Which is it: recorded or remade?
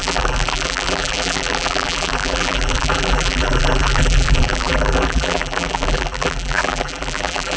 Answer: remade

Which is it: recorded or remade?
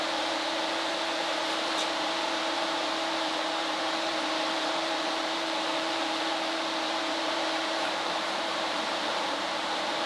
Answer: remade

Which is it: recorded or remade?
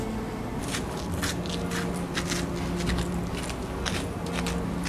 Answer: recorded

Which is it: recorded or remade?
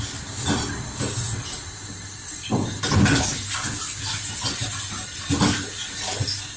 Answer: recorded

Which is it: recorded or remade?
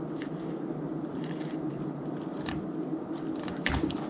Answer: remade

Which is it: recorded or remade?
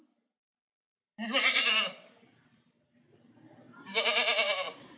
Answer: remade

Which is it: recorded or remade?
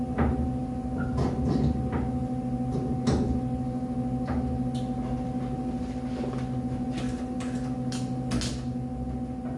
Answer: recorded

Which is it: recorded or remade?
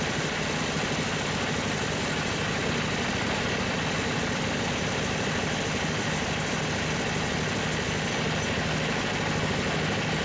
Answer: recorded